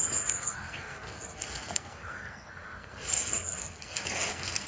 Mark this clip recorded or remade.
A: remade